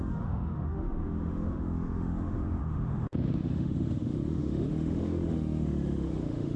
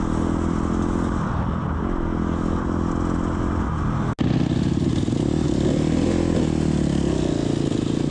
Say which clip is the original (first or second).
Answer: second